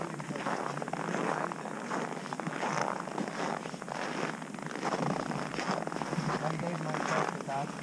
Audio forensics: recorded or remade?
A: recorded